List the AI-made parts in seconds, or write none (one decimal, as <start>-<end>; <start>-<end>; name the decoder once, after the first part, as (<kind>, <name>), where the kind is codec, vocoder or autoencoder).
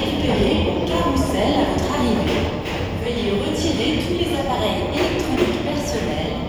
none